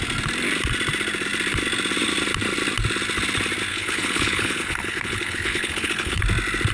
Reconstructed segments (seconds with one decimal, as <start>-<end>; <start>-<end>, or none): 3.7-6.2